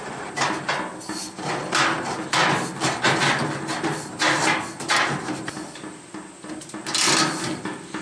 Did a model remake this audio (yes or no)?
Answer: no